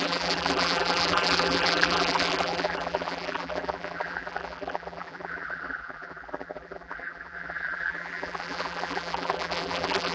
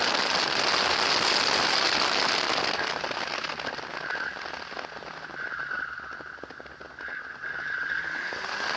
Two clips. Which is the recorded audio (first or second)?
second